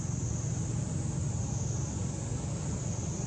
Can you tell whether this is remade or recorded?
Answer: recorded